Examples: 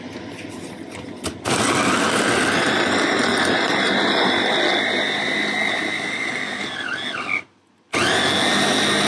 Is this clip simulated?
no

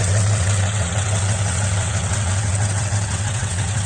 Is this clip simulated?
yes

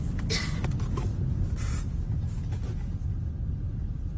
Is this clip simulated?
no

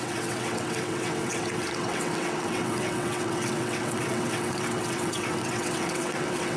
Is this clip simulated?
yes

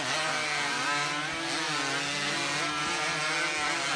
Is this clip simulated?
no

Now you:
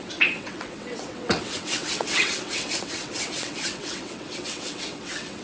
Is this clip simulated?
yes